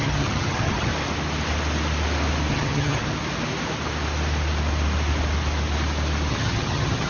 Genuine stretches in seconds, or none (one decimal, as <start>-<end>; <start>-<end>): 0.9-2.5; 3.0-6.3